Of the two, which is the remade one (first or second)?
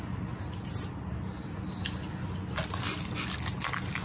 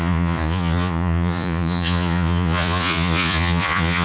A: second